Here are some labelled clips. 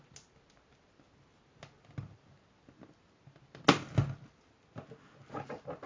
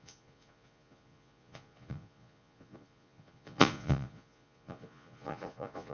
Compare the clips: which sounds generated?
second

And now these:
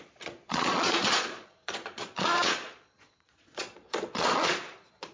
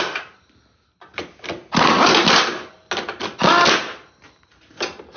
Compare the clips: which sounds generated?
first